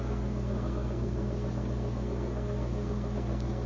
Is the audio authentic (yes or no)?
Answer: no